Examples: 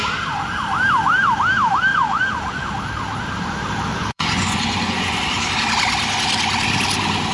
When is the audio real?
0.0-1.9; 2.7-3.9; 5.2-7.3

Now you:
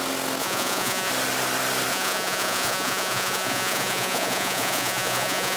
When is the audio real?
0.0-0.4; 1.1-1.9